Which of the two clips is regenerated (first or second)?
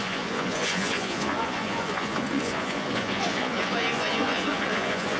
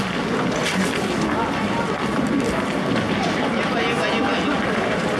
first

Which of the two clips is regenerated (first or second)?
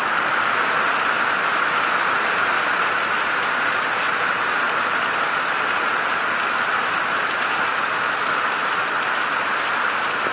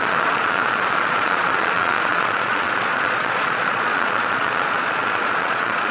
second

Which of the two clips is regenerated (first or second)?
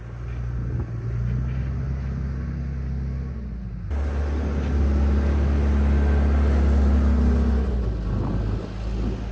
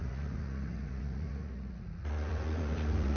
second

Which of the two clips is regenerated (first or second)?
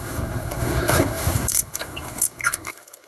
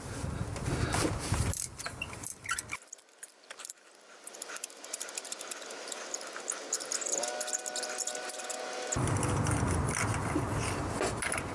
first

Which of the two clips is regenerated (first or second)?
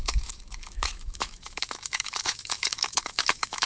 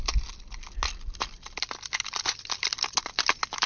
first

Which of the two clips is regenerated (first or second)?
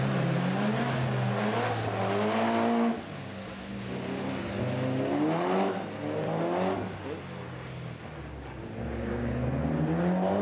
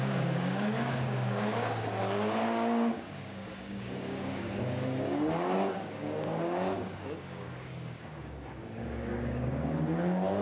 second